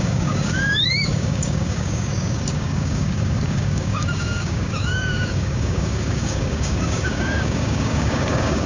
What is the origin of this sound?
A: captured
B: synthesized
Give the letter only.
B